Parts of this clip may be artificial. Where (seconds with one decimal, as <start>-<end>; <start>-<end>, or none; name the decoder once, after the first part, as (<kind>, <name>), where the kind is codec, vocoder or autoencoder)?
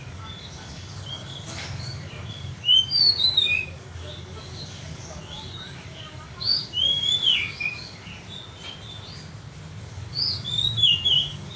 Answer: 0.0-8.1 (codec, DAC); 9.8-11.6